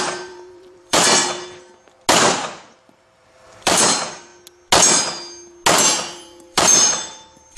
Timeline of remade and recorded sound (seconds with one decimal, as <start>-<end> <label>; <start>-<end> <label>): 0.0-1.2 remade; 1.2-2.9 recorded; 2.9-4.3 remade; 4.3-5.8 recorded; 5.8-7.6 remade